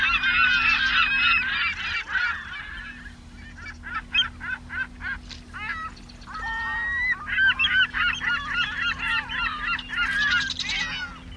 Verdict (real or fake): real